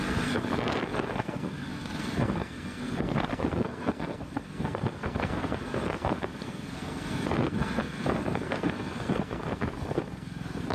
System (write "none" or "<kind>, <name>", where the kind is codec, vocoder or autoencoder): codec, SNAC